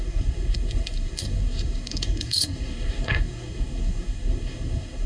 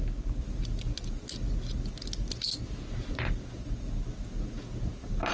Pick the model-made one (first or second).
first